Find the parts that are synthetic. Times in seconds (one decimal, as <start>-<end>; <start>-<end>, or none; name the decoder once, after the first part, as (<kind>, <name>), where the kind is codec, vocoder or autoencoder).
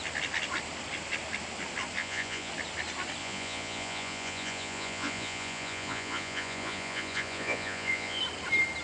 2.0-2.5 (vocoder, Vocos); 3.2-8.2